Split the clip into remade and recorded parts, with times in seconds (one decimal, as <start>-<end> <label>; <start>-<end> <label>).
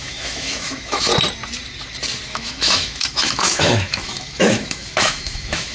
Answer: 0.0-1.1 remade; 1.1-2.3 recorded; 2.3-5.7 remade